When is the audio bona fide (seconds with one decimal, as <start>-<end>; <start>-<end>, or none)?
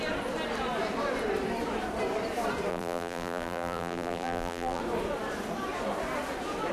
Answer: 0.0-2.7; 4.8-6.7